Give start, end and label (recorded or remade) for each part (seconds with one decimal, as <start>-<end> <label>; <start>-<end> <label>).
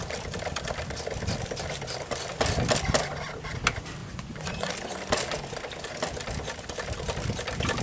0.0-4.0 recorded; 4.0-4.7 remade; 4.7-7.8 recorded